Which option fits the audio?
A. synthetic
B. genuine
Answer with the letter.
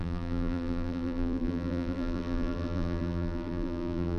A